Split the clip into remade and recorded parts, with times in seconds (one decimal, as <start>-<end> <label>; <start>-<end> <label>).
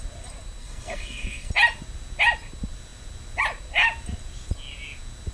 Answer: 0.0-0.6 recorded; 0.6-1.5 remade; 1.5-5.3 recorded